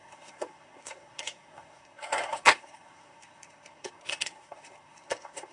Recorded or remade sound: remade